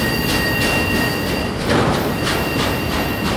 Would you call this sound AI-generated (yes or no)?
no